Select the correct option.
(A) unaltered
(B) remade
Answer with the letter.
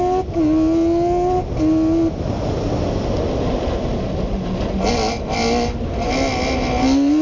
A